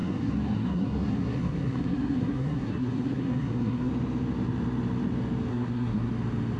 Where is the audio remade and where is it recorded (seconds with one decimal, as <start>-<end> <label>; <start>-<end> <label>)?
0.0-3.9 remade; 3.9-5.5 recorded; 5.5-6.1 remade; 6.1-6.6 recorded